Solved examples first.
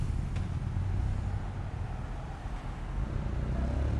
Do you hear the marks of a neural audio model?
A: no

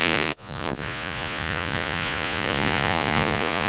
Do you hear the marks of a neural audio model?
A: yes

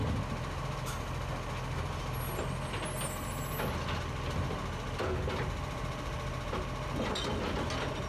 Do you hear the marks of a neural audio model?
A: no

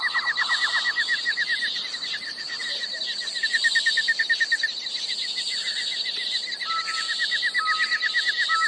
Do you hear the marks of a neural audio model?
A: no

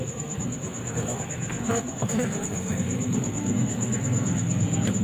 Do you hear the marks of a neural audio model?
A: yes